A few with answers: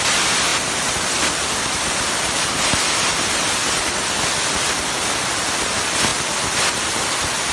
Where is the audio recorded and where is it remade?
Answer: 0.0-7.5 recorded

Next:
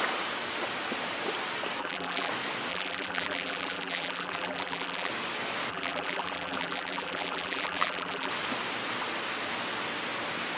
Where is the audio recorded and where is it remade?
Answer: 0.0-1.8 recorded; 1.8-2.3 remade; 2.3-2.7 recorded; 2.7-5.1 remade; 5.1-5.7 recorded; 5.7-8.3 remade; 8.3-10.6 recorded

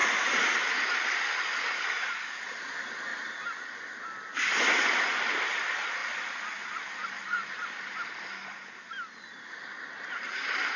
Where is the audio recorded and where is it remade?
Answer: 0.0-3.1 recorded; 3.1-3.7 remade; 3.7-10.8 recorded

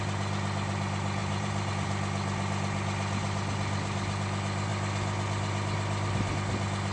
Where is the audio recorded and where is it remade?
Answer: 0.0-1.2 recorded; 1.2-1.7 remade; 1.7-6.9 recorded

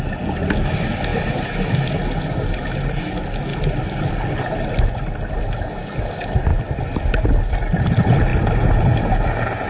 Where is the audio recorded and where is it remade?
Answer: 0.0-3.5 recorded; 3.5-4.1 remade; 4.1-9.7 recorded